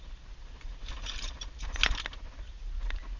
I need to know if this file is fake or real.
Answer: real